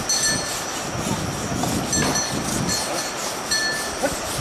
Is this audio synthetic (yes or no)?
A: no